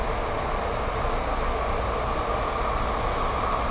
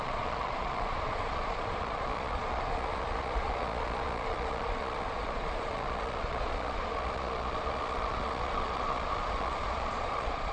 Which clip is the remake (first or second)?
second